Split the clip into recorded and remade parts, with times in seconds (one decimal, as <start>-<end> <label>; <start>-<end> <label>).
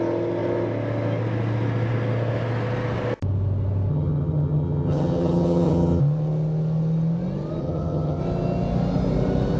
0.0-3.9 recorded; 3.9-6.0 remade; 6.0-7.6 recorded; 7.6-8.2 remade; 8.2-9.6 recorded